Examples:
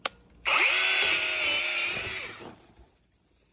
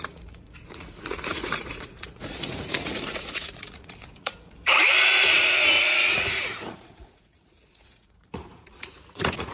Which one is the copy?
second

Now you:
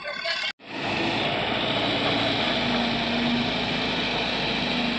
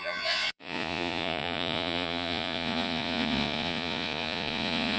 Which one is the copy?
second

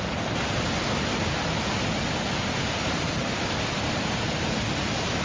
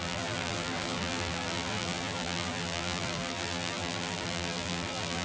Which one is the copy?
second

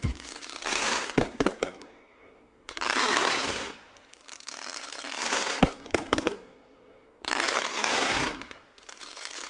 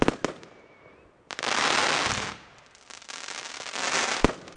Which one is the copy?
first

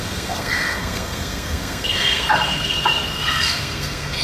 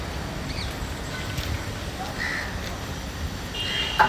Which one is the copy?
first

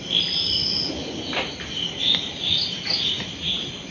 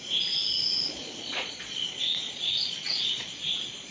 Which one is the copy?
second